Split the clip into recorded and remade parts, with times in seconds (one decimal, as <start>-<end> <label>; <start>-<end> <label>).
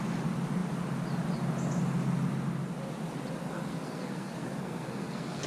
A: 0.0-3.4 recorded; 3.4-5.5 remade